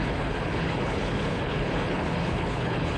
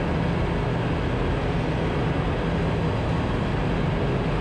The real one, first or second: second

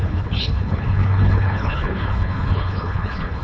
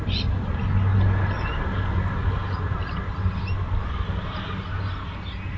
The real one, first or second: second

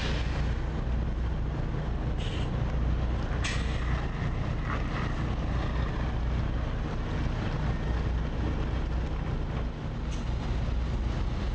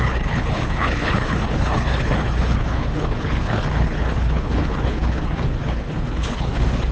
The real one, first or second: first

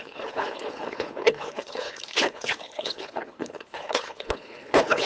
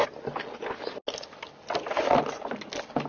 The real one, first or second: second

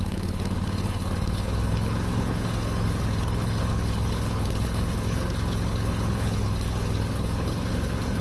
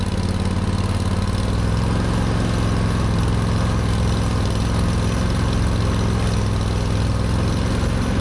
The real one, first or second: second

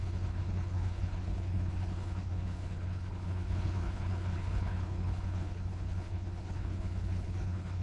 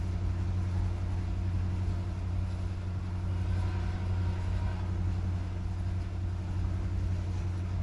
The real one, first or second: second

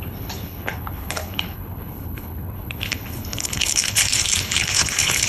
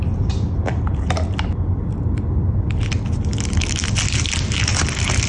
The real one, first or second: second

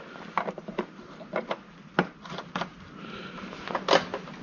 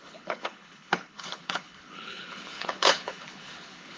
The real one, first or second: first